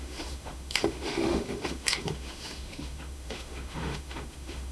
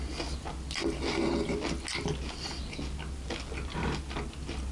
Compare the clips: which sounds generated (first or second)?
first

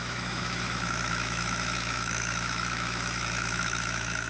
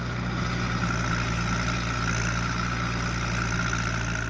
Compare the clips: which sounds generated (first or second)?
first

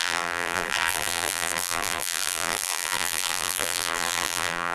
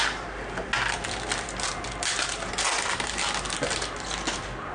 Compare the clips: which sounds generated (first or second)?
first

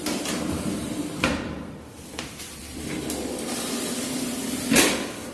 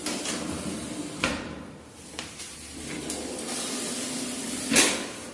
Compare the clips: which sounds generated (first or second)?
first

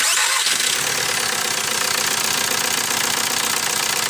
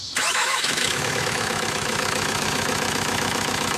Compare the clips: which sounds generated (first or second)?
second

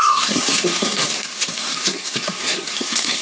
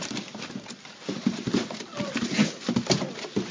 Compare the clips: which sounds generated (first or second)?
first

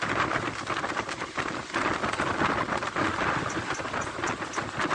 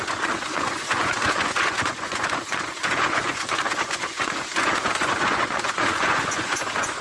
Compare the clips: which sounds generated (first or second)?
second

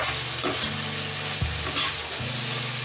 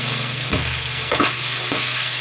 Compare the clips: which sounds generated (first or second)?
second